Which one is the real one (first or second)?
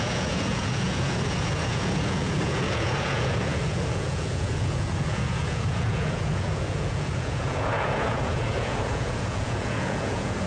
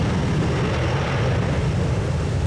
second